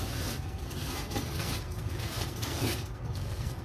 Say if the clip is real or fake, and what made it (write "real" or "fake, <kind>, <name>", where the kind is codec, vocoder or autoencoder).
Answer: fake, codec, SNAC